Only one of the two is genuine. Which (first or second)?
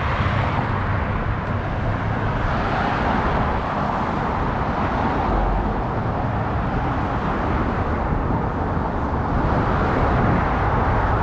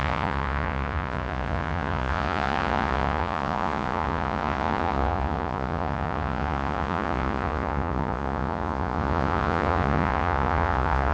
first